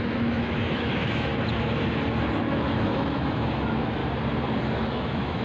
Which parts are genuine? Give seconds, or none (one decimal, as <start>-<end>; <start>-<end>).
1.3-2.4; 4.0-4.9